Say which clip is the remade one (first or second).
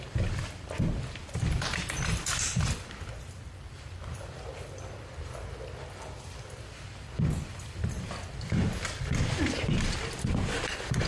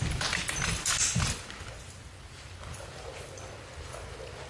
first